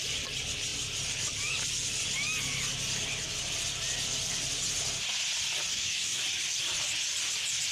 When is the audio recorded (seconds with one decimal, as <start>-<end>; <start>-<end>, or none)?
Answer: 0.0-5.7; 6.2-7.7